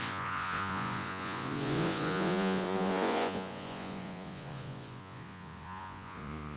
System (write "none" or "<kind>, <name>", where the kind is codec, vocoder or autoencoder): vocoder, Vocos